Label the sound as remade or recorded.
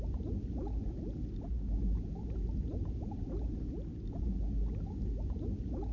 recorded